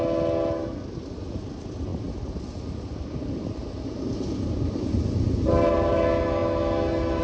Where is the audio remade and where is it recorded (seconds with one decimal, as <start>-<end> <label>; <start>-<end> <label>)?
0.0-3.6 recorded; 3.6-6.0 remade; 6.0-7.2 recorded